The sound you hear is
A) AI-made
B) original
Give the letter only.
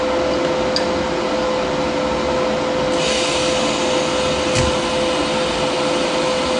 B